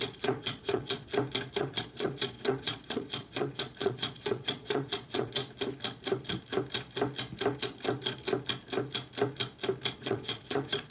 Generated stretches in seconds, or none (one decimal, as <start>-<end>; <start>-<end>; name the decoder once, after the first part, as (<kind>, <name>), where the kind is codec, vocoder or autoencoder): 0.0-1.1 (vocoder, Vocos); 1.6-5.4; 10.0-10.9